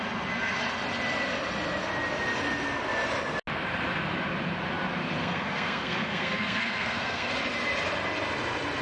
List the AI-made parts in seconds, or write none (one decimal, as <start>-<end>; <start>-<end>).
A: 5.2-7.3

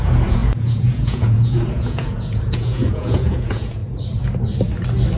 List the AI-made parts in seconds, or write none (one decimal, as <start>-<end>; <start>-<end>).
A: 0.0-3.8